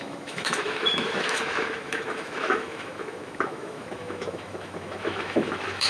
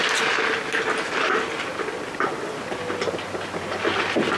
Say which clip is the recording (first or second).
second